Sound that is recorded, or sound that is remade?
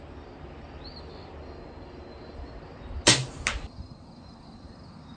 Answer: recorded